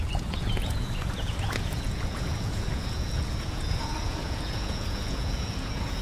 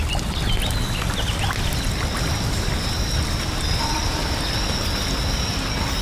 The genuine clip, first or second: second